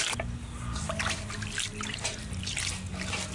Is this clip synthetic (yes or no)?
no